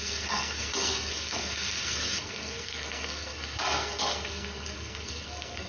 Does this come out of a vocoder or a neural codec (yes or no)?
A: yes